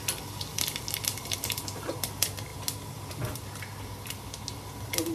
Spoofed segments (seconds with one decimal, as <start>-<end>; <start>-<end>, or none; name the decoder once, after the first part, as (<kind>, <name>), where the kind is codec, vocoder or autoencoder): none